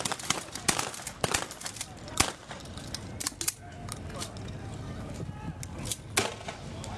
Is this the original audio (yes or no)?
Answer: yes